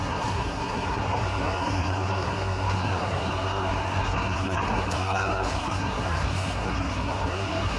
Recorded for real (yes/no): no